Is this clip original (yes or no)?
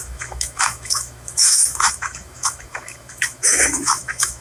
no